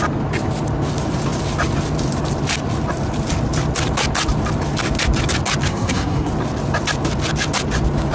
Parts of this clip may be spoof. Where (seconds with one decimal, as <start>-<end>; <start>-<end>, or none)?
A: 5.7-6.3